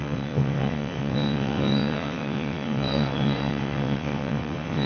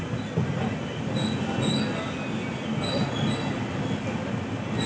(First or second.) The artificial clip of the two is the first